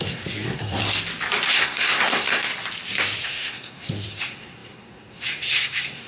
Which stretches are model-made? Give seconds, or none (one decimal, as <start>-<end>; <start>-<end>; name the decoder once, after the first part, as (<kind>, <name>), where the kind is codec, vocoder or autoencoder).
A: 0.0-0.8 (codec, SNAC); 1.5-2.5; 3.2-6.1